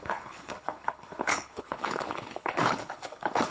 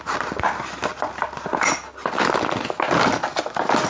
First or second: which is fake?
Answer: first